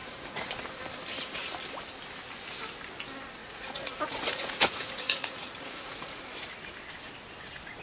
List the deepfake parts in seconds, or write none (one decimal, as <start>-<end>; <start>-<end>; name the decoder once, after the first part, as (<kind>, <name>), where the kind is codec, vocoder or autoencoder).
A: 0.0-0.5 (vocoder, Vocos); 3.4-6.2